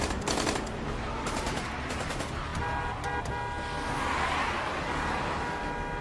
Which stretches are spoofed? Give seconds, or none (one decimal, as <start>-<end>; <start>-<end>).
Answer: none